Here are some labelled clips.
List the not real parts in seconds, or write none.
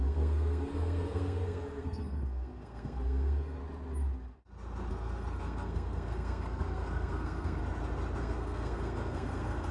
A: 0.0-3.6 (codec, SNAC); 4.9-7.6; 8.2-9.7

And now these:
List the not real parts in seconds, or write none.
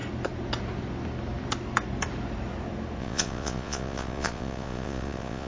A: 3.0-5.5 (vocoder, Vocos)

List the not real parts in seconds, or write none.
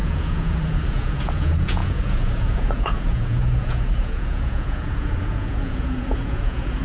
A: 0.0-6.8 (vocoder, Vocos)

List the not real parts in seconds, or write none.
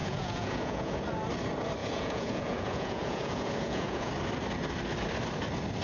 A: 0.0-1.0 (vocoder, Vocos); 1.8-4.1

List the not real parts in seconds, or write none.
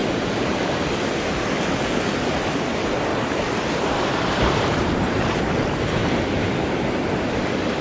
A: 0.0-0.8 (vocoder, BigVGAN v2); 3.1-5.4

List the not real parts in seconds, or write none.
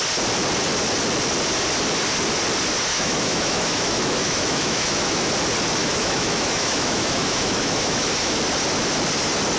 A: 2.9-5.3 (autoencoder, DAC-VAE); 5.8-8.4